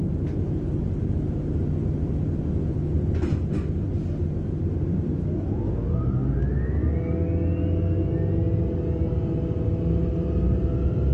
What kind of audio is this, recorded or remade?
recorded